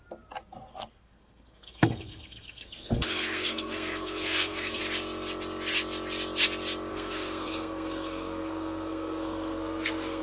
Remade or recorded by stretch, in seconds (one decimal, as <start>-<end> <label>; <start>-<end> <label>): 0.0-0.7 recorded; 0.7-4.8 remade; 4.8-6.9 recorded; 6.9-10.2 remade